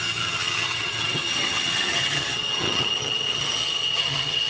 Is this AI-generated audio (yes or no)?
yes